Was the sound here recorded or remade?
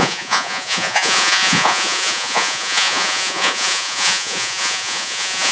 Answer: remade